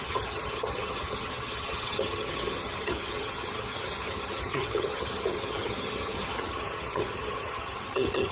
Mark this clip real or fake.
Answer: fake